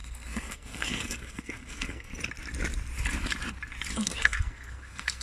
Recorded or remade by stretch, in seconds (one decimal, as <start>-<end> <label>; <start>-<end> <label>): 0.0-2.1 remade; 2.1-3.9 recorded; 3.9-5.2 remade